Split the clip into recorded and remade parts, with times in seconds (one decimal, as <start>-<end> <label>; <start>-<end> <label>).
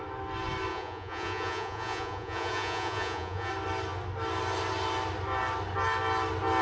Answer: 0.0-0.7 recorded; 0.7-3.5 remade; 3.5-6.6 recorded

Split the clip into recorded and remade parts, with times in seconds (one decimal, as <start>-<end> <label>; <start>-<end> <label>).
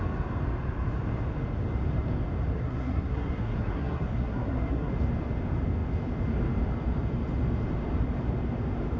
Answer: 0.0-2.5 recorded; 2.5-4.9 remade; 4.9-9.0 recorded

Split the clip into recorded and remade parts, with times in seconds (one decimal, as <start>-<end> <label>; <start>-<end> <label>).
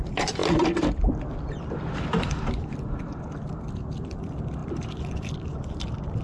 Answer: 0.0-6.2 remade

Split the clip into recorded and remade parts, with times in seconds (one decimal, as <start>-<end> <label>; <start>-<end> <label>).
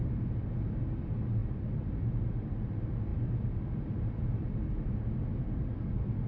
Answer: 0.0-6.3 recorded